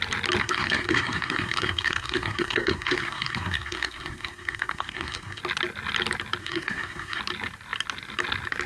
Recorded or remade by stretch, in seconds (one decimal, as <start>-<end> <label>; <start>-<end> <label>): 0.0-0.4 recorded; 0.4-5.4 remade; 5.4-6.4 recorded; 6.4-7.2 remade; 7.2-8.7 recorded